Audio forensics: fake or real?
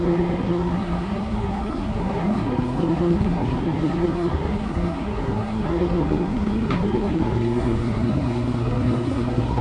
fake